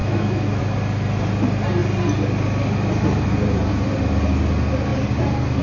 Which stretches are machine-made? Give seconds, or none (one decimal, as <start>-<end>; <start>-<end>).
0.0-0.6